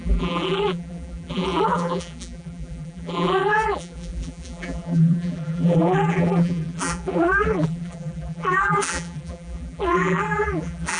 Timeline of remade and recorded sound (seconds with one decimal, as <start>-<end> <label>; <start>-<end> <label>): 0.0-11.0 remade